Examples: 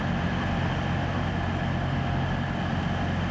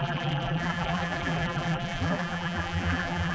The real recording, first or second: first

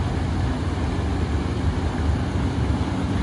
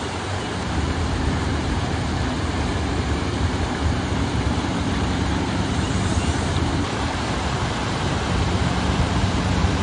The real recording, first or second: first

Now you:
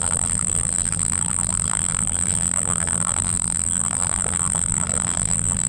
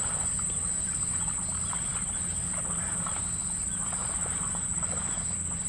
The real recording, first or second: second